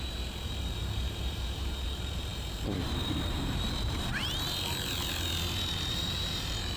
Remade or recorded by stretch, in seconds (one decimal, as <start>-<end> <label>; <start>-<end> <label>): 0.0-4.1 remade; 4.1-5.9 recorded; 5.9-6.8 remade